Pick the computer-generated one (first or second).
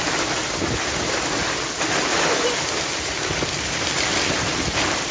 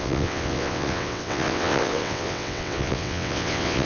second